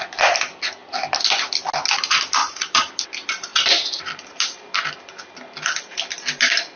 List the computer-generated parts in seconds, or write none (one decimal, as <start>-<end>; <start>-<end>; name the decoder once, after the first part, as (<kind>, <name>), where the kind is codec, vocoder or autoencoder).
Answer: 2.4-2.9 (vocoder, Vocos)